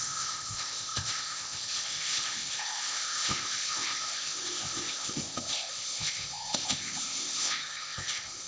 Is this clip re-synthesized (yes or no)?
yes